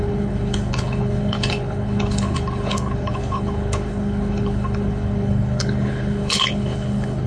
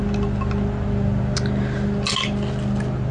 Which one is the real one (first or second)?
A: second